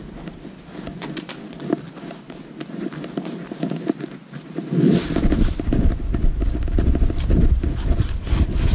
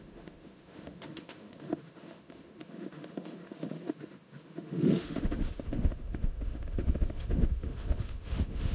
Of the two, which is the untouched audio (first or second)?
first